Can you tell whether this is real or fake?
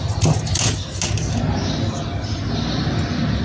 real